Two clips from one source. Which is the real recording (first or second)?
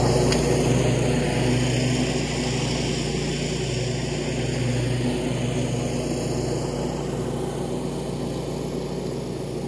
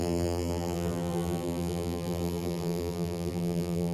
first